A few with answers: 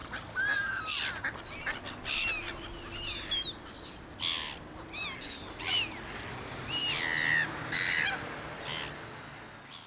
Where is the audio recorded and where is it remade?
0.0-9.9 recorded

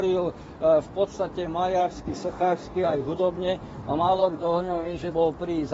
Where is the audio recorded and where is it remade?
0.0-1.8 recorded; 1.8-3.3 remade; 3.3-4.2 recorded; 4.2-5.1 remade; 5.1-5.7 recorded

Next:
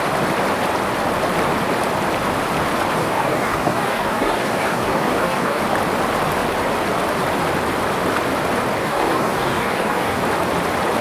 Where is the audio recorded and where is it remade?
0.0-3.0 recorded; 3.0-5.6 remade; 5.6-8.8 recorded; 8.8-10.2 remade; 10.2-11.0 recorded

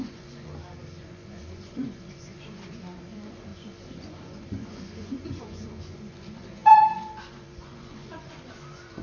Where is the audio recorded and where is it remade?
0.0-0.5 remade; 0.5-1.0 recorded; 1.0-9.0 remade